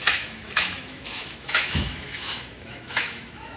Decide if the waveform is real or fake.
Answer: fake